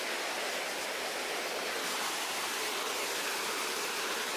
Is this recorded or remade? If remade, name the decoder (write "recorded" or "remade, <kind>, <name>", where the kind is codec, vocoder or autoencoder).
recorded